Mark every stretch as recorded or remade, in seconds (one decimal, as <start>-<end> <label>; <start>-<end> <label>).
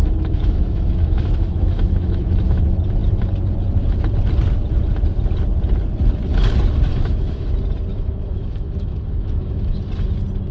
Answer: 0.0-2.6 remade; 2.6-6.9 recorded; 6.9-7.5 remade; 7.5-7.9 recorded; 7.9-9.8 remade; 9.8-10.5 recorded